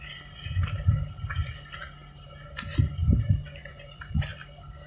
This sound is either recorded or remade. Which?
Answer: recorded